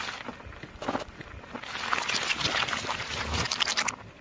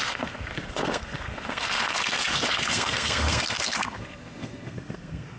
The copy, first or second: second